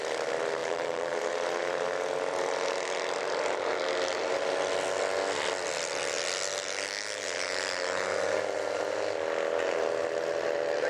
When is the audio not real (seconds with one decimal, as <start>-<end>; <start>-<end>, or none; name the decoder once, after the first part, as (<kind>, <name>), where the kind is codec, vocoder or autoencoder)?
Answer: 0.6-1.2 (vocoder, BigVGAN v2)